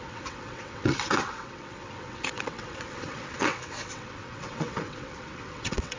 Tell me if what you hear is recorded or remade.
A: remade